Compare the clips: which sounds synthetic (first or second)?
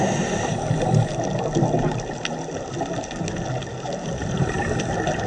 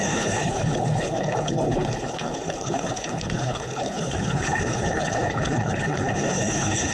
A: second